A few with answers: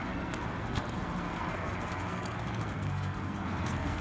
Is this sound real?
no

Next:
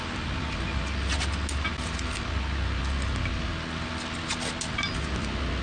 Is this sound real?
yes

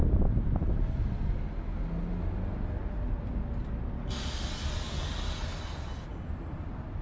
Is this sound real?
yes